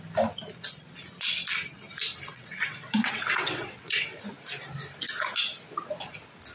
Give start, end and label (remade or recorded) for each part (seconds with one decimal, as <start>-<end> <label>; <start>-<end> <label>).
0.0-2.3 recorded; 2.3-4.2 remade; 4.2-6.5 recorded